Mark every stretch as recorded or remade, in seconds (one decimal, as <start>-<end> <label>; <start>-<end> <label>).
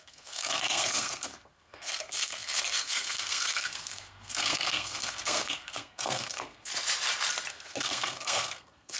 0.0-6.7 remade; 6.7-7.5 recorded; 7.5-9.0 remade